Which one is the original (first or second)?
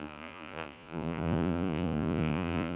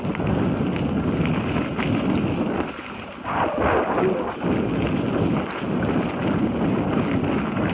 second